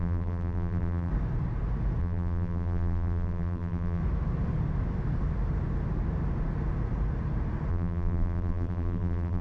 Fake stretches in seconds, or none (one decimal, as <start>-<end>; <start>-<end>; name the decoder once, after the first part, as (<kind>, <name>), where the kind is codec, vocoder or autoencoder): 0.0-1.1 (vocoder, BigVGAN v2); 2.0-4.0; 7.7-9.4